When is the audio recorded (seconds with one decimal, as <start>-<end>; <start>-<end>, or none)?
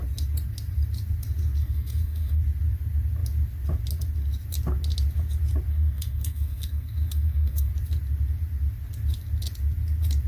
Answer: 0.0-1.6; 2.4-5.7; 7.7-10.3